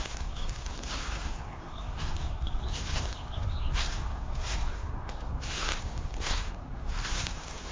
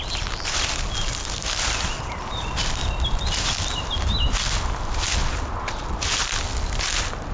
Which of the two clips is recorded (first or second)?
second